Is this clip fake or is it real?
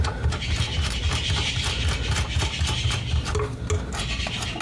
real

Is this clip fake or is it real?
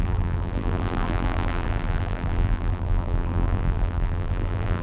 fake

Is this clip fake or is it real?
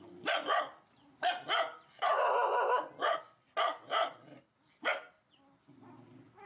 real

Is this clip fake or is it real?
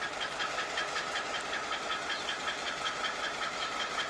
real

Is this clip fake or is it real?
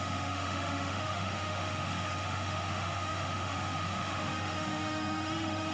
fake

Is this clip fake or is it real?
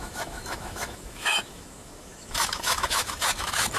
fake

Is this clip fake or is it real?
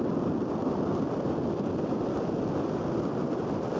fake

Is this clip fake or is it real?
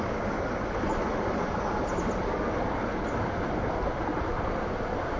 fake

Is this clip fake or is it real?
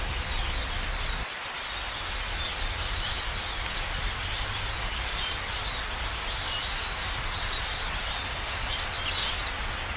real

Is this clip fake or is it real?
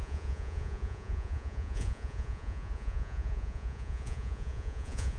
fake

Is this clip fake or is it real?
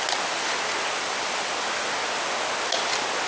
real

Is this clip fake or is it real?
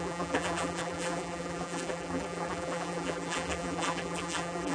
fake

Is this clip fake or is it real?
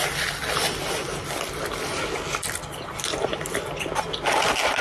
real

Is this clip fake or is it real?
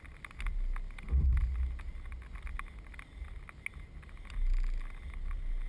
real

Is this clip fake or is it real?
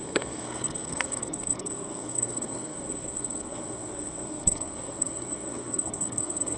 fake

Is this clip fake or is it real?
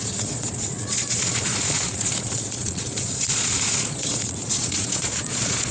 fake